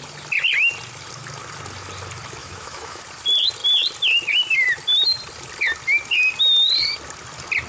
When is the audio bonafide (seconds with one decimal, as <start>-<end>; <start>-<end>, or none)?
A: 0.0-2.4; 3.0-7.7

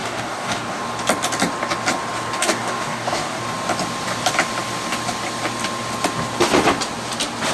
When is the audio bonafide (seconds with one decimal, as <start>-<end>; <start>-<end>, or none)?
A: 0.8-2.4; 3.4-7.5

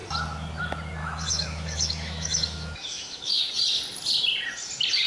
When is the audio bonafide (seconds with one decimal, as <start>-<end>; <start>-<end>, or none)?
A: 0.0-1.0; 3.4-5.1

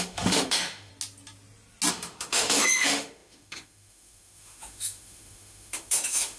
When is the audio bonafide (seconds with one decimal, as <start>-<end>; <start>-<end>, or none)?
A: 0.9-1.9